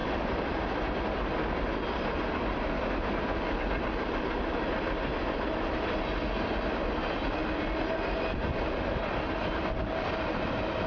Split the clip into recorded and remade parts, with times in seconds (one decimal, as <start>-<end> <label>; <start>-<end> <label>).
0.0-10.9 recorded